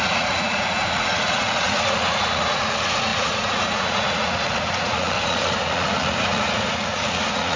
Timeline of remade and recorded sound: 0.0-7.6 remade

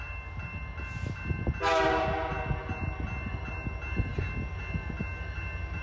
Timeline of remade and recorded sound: 0.0-5.8 recorded

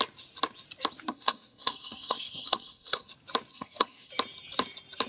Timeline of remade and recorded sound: 0.0-1.1 recorded; 1.1-3.1 remade; 3.1-3.5 recorded; 3.5-4.1 remade; 4.1-5.1 recorded

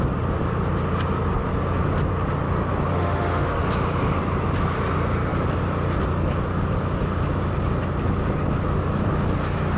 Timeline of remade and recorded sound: 0.0-2.9 recorded; 2.9-3.6 remade; 3.6-9.8 recorded

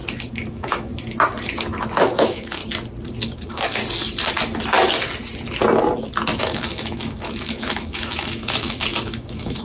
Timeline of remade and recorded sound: 0.0-0.5 recorded; 0.5-0.9 remade; 0.9-2.0 recorded; 2.0-2.6 remade; 2.6-3.2 recorded; 3.2-3.8 remade; 3.8-6.4 recorded; 6.4-9.6 remade

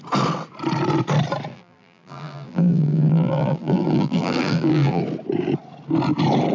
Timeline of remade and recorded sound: 0.0-1.5 recorded; 1.5-5.0 remade; 5.0-6.5 recorded

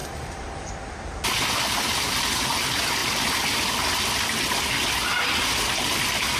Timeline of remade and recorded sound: 0.0-0.7 remade; 0.7-6.4 recorded